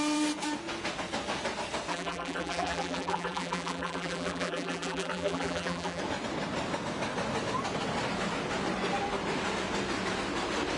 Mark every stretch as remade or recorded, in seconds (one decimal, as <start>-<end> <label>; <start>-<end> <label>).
0.0-1.9 recorded; 1.9-6.0 remade; 6.0-10.8 recorded